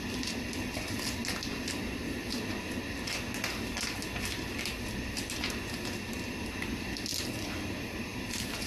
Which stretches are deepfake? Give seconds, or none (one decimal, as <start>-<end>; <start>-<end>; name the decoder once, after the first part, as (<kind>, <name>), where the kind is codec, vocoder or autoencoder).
none